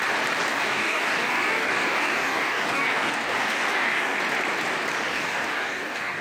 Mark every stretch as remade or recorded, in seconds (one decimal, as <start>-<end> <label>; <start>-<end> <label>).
0.0-0.5 recorded; 0.5-4.2 remade; 4.2-5.1 recorded; 5.1-6.2 remade